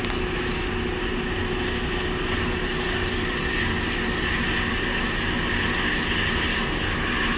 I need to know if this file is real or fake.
real